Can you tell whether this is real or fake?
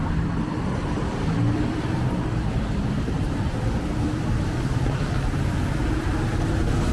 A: fake